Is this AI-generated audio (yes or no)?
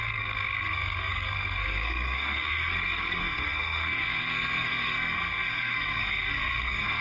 yes